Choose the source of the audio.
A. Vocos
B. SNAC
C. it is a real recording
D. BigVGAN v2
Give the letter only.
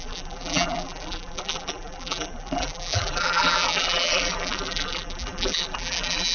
D